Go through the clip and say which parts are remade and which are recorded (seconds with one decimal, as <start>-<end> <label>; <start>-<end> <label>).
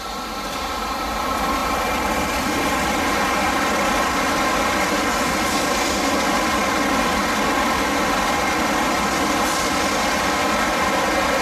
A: 0.0-1.6 recorded; 1.6-4.8 remade; 4.8-11.4 recorded